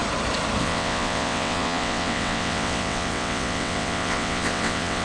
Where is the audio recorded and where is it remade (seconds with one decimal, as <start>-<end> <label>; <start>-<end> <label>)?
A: 0.0-0.6 recorded; 0.6-5.0 remade